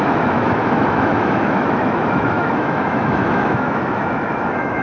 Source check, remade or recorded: remade